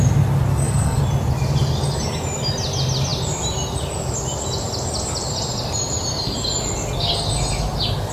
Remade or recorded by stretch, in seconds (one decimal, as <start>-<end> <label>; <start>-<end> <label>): 0.0-0.5 recorded; 0.5-1.0 remade; 1.0-8.1 recorded